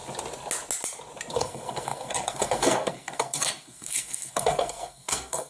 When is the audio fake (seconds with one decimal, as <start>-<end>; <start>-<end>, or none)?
1.3-5.5